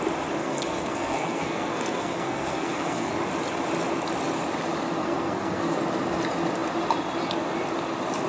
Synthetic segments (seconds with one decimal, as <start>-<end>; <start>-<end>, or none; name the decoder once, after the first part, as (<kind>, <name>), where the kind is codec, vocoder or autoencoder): 0.4-3.1 (codec, SNAC); 5.0-5.8